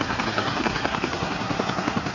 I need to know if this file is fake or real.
fake